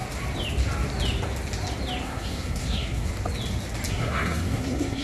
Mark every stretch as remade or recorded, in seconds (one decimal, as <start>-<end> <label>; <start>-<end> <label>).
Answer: 0.0-2.0 recorded; 2.0-3.1 remade; 3.1-3.9 recorded; 3.9-5.0 remade